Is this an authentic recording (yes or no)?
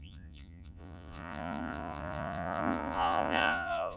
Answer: no